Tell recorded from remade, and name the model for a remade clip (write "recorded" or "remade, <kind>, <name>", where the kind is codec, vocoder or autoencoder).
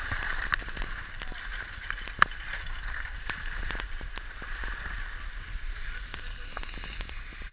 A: recorded